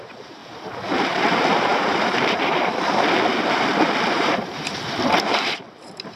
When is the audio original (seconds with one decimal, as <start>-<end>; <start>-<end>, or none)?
0.4-0.9